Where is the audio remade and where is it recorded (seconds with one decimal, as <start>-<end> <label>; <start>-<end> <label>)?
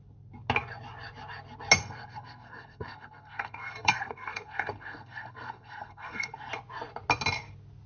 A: 0.0-1.8 recorded; 1.8-6.5 remade; 6.5-7.9 recorded